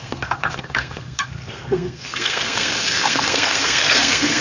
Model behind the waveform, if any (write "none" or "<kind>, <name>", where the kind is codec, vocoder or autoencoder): codec, SNAC